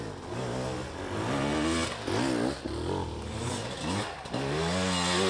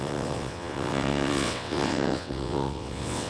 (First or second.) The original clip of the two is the first